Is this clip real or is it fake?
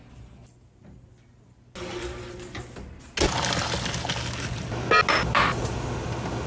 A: real